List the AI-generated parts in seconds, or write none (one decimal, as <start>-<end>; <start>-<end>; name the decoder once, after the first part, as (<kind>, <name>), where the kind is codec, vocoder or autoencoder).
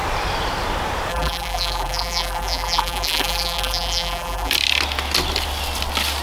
1.1-4.5 (vocoder, BigVGAN v2)